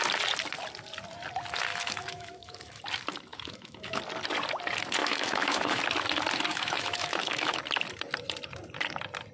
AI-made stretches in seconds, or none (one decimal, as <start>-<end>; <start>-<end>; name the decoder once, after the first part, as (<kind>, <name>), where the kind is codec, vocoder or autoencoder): 1.7-2.8 (autoencoder, DAC-VAE); 3.3-4.0; 5.0-5.8; 6.5-7.6